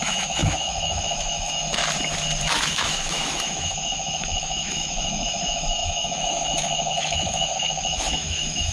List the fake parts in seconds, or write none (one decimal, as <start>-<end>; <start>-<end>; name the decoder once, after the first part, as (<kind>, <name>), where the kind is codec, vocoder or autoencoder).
0.0-1.8 (autoencoder, DAC-VAE); 2.4-8.7